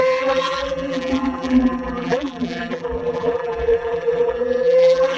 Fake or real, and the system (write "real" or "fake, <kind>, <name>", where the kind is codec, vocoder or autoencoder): fake, vocoder, BigVGAN v2